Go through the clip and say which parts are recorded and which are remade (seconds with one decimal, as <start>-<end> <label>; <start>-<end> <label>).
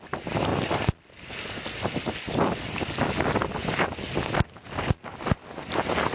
0.0-6.1 recorded